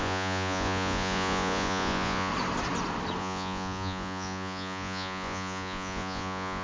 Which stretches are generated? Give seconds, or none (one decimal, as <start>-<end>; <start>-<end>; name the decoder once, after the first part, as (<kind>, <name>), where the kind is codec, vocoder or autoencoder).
0.0-2.3 (vocoder, Vocos); 3.2-6.6